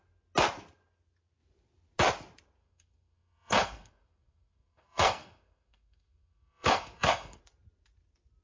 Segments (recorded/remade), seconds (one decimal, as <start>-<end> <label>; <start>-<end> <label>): 0.0-2.6 recorded; 2.6-7.4 remade; 7.4-8.4 recorded